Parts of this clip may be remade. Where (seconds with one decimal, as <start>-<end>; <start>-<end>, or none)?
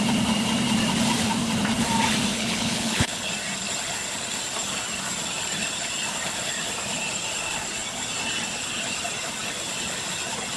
2.3-3.3